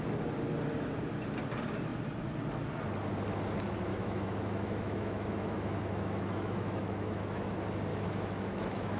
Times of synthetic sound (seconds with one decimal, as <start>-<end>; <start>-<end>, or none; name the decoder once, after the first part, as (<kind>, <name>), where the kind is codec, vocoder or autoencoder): 3.9-7.5 (autoencoder, DAC-VAE); 7.9-9.0